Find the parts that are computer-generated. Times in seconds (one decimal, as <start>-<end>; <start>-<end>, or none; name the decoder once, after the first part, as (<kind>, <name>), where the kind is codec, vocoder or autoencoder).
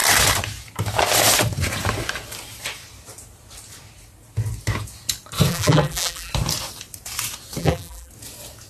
5.5-6.3 (vocoder, BigVGAN v2); 7.6-8.1